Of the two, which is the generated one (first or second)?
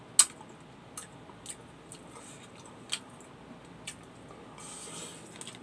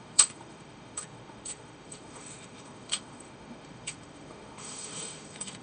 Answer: second